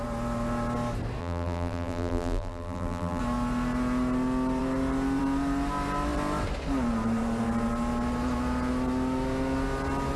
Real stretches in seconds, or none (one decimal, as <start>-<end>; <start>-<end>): 0.0-1.2; 3.2-10.2